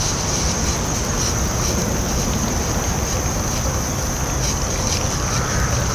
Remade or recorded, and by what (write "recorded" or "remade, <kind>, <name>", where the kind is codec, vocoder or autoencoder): recorded